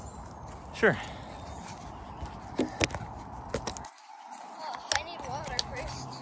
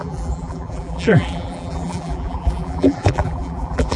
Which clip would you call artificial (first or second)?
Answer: second